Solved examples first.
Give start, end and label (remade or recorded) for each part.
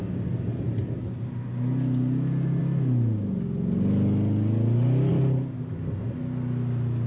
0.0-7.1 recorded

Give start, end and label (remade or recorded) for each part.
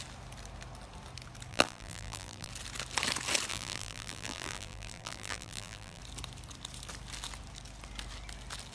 0.0-1.5 recorded; 1.5-2.5 remade; 2.5-3.5 recorded; 3.5-6.0 remade; 6.0-8.7 recorded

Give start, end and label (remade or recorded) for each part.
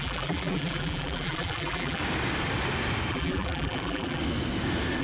0.0-2.0 remade; 2.0-3.1 recorded; 3.1-4.2 remade; 4.2-5.0 recorded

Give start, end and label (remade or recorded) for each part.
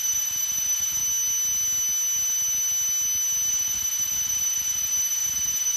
0.0-1.0 remade; 1.0-3.5 recorded; 3.5-5.8 remade